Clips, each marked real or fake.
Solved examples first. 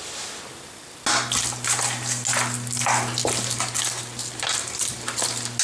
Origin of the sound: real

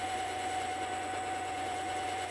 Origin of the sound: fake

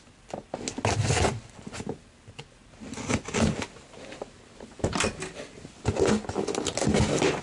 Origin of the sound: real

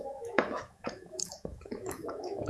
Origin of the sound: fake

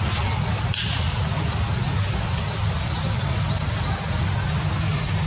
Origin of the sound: real